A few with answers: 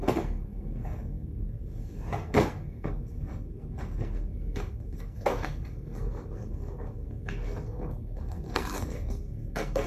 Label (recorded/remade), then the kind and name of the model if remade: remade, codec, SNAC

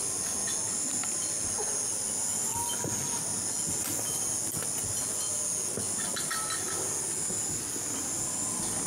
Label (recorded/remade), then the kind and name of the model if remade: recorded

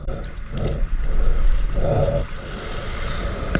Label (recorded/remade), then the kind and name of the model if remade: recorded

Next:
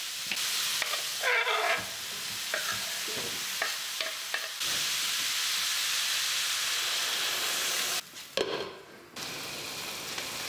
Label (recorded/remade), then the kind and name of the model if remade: recorded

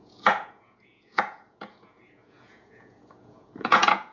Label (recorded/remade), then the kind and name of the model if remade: remade, vocoder, Vocos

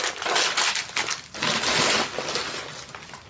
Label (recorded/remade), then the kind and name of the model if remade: recorded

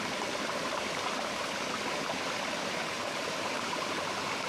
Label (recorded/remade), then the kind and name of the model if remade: remade, vocoder, BigVGAN v2